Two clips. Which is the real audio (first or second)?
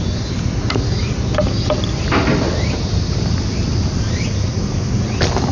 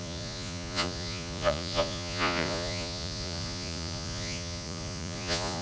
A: first